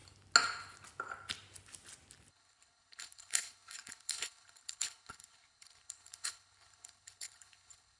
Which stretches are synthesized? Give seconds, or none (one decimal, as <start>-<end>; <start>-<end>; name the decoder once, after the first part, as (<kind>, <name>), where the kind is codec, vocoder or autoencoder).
2.3-8.0 (codec, HILCodec)